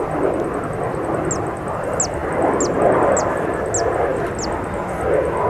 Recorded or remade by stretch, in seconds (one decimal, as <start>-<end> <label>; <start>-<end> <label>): 0.0-5.5 recorded

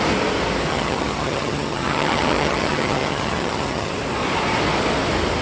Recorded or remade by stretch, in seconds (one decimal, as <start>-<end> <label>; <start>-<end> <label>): 0.0-0.7 recorded; 0.7-3.9 remade; 3.9-5.4 recorded

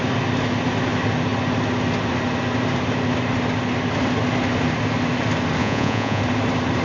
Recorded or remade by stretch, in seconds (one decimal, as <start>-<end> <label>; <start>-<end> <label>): 0.0-5.6 recorded; 5.6-6.2 remade; 6.2-6.8 recorded

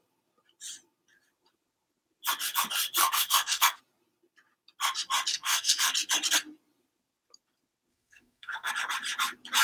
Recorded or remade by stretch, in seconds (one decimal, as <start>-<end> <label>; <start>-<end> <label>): 0.0-3.0 recorded; 3.0-3.8 remade; 3.8-5.3 recorded; 5.3-5.9 remade; 5.9-7.9 recorded; 7.9-8.7 remade; 8.7-9.6 recorded

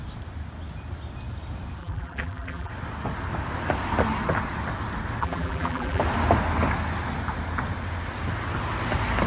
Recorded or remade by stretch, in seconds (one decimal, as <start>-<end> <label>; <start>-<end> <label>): 0.0-1.8 recorded; 1.8-2.7 remade; 2.7-5.2 recorded; 5.2-6.0 remade; 6.0-9.3 recorded

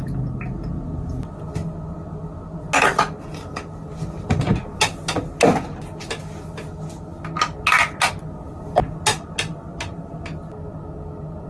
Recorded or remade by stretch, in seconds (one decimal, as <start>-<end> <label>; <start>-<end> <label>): 0.0-11.5 recorded